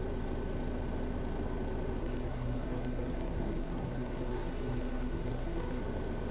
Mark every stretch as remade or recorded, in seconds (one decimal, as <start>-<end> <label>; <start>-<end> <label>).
0.0-2.0 recorded; 2.0-5.8 remade; 5.8-6.3 recorded